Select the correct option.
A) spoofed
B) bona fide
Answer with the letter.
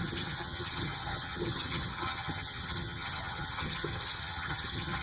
A